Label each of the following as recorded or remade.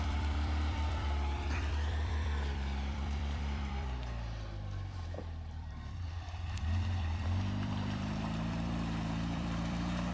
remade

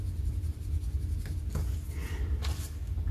recorded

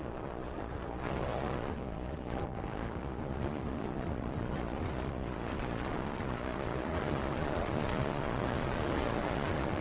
remade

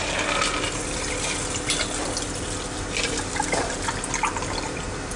recorded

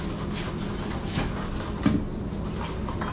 recorded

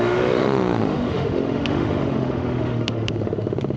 remade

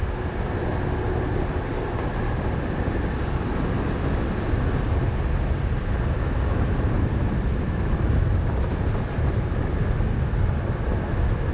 recorded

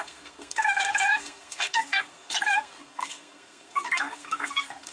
remade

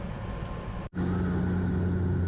recorded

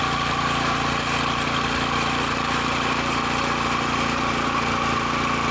recorded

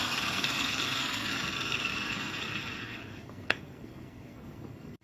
remade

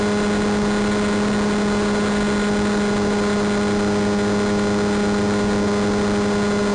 recorded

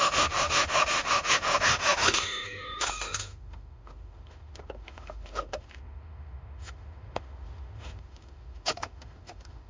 remade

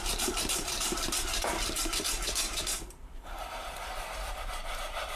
remade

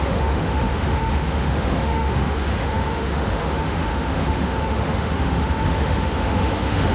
remade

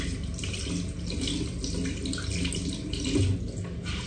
recorded